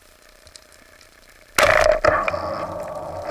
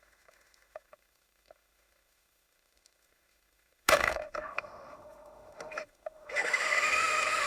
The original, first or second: first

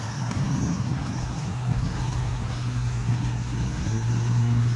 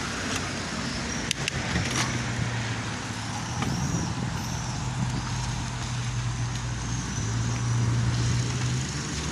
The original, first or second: second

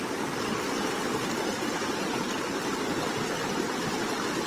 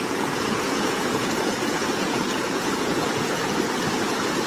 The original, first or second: first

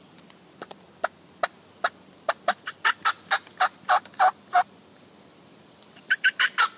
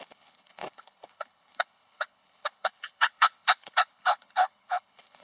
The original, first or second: first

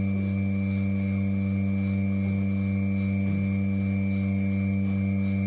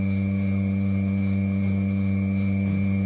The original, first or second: first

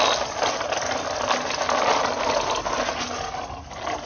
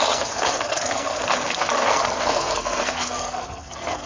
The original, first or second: first